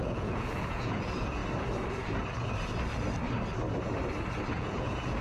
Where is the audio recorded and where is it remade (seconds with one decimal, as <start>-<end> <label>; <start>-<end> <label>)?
0.0-1.4 remade; 1.4-4.5 recorded; 4.5-5.2 remade